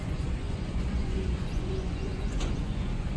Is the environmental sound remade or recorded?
remade